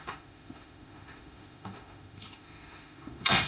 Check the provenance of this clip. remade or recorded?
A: remade